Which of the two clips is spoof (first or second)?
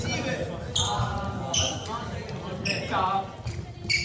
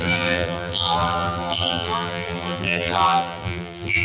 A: second